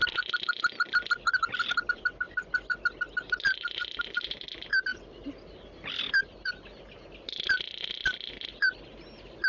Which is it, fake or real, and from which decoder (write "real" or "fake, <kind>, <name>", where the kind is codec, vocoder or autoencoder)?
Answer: real